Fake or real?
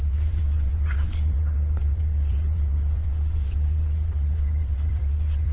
fake